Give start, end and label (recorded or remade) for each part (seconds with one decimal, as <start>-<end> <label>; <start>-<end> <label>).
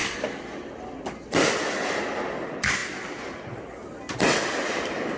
0.0-5.2 recorded